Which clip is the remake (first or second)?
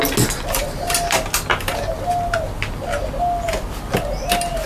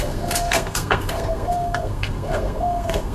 second